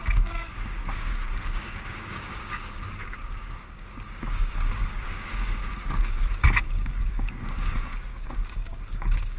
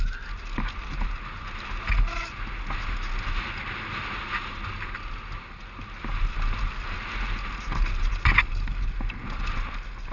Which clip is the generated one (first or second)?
first